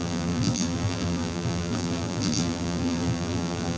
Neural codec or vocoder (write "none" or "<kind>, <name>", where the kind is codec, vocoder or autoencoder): vocoder, BigVGAN v2